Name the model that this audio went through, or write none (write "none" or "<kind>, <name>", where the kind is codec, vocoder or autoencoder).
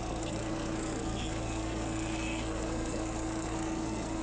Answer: codec, SNAC